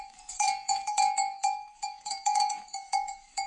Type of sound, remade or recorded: remade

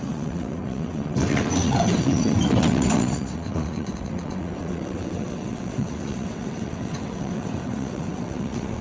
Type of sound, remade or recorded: remade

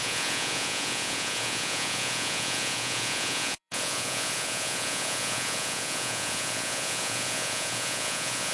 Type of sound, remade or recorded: remade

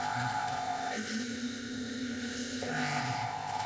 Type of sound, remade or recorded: remade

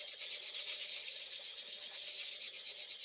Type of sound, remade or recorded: recorded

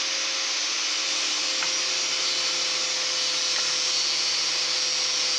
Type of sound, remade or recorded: recorded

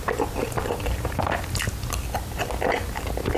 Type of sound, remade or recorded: recorded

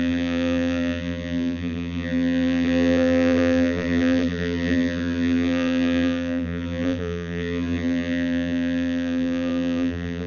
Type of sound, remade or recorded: remade